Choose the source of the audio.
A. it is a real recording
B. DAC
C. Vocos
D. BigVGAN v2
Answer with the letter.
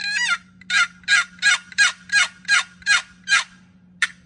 A